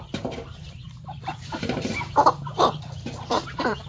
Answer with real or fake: fake